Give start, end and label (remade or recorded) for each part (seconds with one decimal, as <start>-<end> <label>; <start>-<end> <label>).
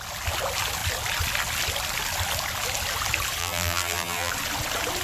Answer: 0.0-3.4 recorded; 3.4-4.3 remade; 4.3-5.0 recorded